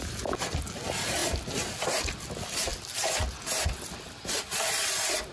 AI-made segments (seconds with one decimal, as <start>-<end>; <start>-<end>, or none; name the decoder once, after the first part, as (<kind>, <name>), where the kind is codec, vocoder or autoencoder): none